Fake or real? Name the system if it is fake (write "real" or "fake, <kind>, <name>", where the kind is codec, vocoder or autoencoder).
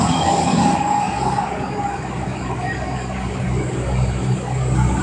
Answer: fake, codec, DAC